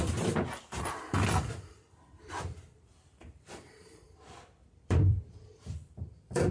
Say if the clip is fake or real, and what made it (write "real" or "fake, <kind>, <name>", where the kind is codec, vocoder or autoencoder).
fake, vocoder, BigVGAN v2